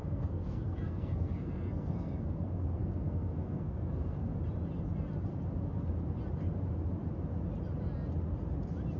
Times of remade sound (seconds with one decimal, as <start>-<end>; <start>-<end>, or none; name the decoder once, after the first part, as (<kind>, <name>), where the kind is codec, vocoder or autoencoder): 0.0-4.3 (codec, SNAC)